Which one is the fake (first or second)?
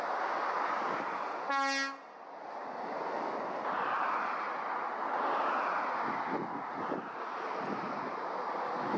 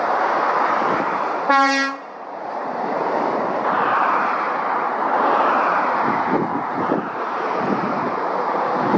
second